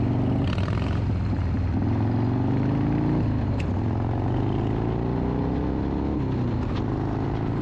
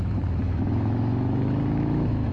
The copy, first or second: second